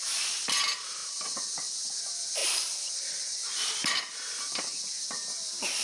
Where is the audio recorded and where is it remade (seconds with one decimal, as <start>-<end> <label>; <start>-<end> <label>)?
0.0-5.8 recorded